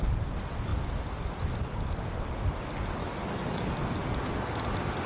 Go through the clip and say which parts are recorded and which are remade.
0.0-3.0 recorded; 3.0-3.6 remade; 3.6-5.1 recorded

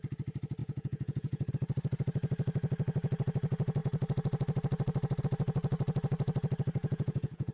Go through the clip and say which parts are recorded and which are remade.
0.0-0.6 recorded; 0.6-1.5 remade; 1.5-6.8 recorded; 6.8-7.5 remade

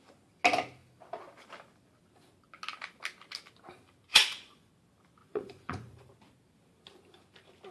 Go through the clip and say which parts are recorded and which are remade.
0.0-4.1 recorded; 4.1-4.7 remade; 4.7-5.2 recorded; 5.2-6.1 remade; 6.1-7.7 recorded

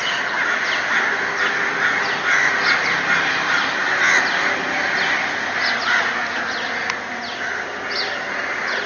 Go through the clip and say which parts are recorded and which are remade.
0.0-8.9 recorded

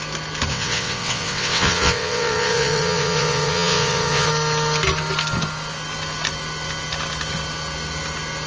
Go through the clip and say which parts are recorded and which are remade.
0.0-0.5 recorded; 0.5-4.3 remade; 4.3-8.5 recorded

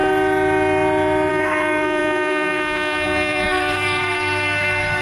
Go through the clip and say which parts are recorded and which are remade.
0.0-1.3 recorded; 1.3-5.0 remade

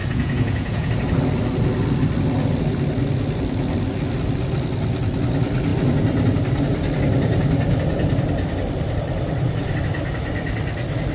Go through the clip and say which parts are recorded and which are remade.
0.0-0.9 remade; 0.9-11.1 recorded

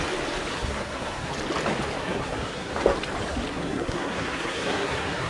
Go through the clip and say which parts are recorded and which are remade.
0.0-0.5 recorded; 0.5-1.3 remade; 1.3-2.0 recorded; 2.0-2.7 remade; 2.7-3.5 recorded; 3.5-5.3 remade